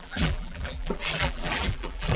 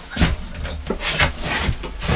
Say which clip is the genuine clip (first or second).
second